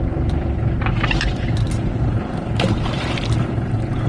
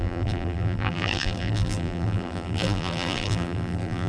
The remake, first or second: second